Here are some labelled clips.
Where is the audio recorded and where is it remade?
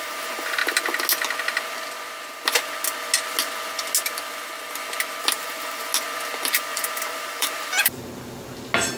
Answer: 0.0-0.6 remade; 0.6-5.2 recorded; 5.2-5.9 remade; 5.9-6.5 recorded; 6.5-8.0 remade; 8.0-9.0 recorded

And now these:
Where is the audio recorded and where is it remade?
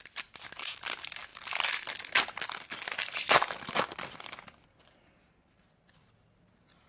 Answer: 0.0-6.9 recorded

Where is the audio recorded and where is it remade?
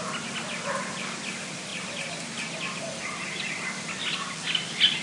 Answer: 0.0-5.0 recorded